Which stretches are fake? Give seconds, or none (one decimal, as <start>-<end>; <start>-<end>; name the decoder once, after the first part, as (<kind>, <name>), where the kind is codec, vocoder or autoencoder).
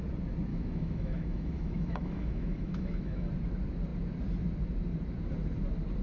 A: 0.5-3.3 (autoencoder, DAC-VAE)